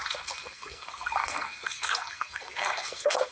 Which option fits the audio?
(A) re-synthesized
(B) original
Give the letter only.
A